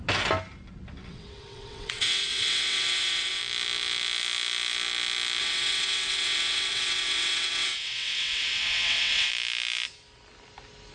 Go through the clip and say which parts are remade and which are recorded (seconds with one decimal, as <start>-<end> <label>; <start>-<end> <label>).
0.0-1.0 recorded; 1.0-3.4 remade; 3.4-5.4 recorded; 5.4-9.3 remade; 9.3-10.9 recorded